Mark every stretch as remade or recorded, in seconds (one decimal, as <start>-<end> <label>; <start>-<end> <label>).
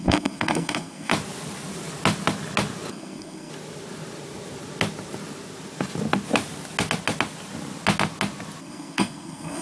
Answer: 0.0-1.1 remade; 1.1-2.9 recorded; 2.9-3.5 remade; 3.5-8.6 recorded; 8.6-9.6 remade